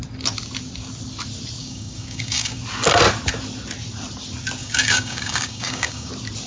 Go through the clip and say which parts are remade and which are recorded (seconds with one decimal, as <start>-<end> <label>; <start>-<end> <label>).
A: 0.0-1.6 recorded; 1.6-2.6 remade; 2.6-4.6 recorded; 4.6-6.1 remade; 6.1-6.5 recorded